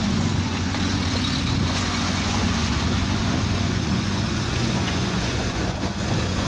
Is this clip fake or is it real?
fake